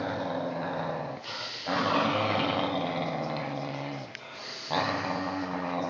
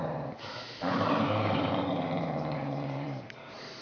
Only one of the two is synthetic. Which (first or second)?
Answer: second